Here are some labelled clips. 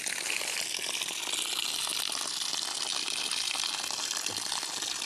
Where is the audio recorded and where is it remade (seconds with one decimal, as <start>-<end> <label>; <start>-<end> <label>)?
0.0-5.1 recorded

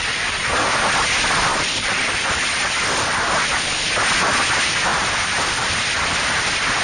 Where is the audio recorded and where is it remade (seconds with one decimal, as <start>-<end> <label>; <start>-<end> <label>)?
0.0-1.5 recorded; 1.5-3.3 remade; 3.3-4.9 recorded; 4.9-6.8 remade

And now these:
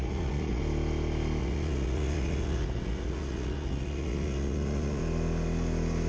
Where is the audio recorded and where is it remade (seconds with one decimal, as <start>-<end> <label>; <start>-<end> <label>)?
0.0-0.6 remade; 0.6-1.4 recorded; 1.4-5.0 remade; 5.0-6.1 recorded